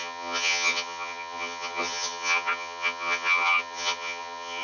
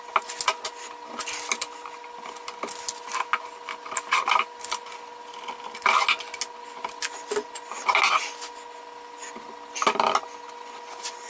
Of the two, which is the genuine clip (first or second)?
second